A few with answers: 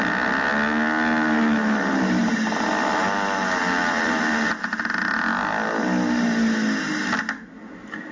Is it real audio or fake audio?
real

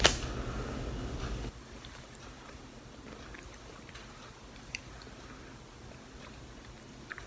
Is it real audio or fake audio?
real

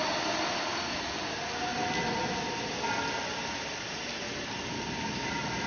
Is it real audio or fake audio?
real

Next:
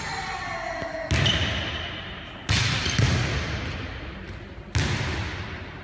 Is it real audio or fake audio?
real